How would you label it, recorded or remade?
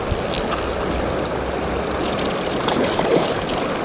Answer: recorded